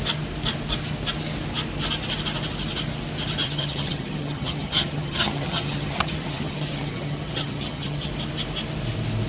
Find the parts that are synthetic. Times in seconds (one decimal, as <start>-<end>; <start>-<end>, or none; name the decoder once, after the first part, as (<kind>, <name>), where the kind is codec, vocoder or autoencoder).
3.4-8.1 (vocoder, HiFi-GAN)